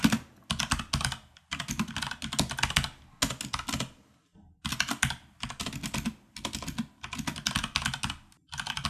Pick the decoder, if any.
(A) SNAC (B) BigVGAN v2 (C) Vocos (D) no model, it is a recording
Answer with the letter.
D